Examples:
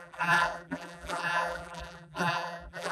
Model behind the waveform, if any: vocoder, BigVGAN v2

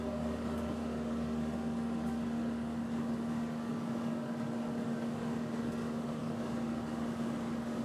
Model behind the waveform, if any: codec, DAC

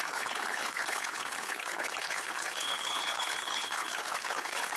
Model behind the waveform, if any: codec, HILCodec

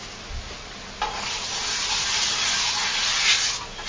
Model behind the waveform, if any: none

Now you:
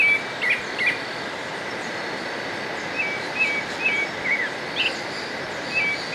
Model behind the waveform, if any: none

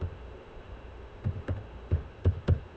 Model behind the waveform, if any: autoencoder, DAC-VAE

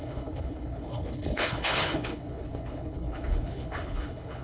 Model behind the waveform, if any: codec, HILCodec